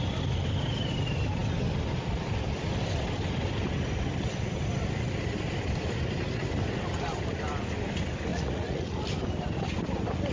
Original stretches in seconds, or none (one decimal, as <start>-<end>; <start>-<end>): 0.0-8.3; 9.0-10.3